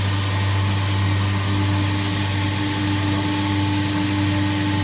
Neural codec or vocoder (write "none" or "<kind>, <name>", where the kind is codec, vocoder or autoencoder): none